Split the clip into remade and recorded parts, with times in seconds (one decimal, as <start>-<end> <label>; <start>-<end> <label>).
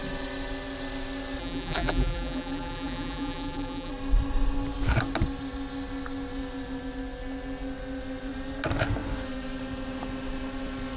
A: 0.0-1.4 recorded; 1.4-3.9 remade; 3.9-11.0 recorded